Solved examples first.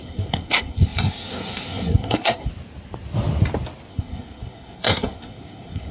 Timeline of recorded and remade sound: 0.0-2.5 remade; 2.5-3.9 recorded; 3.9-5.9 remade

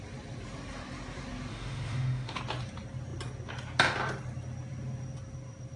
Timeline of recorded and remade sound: 0.0-1.5 recorded; 1.5-2.4 remade; 2.4-5.8 recorded

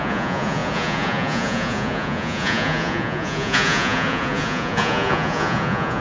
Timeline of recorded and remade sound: 0.0-6.0 remade

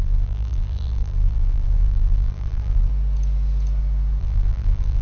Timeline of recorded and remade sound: 0.0-2.9 remade; 2.9-4.2 recorded; 4.2-5.0 remade

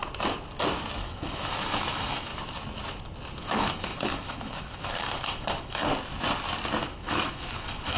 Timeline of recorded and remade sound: 0.0-1.0 recorded; 1.0-2.3 remade; 2.3-3.4 recorded; 3.4-5.9 remade; 5.9-6.9 recorded; 6.9-8.0 remade

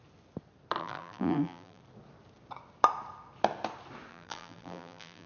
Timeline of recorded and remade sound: 0.0-0.8 recorded; 0.8-1.8 remade; 1.8-4.1 recorded; 4.1-5.3 remade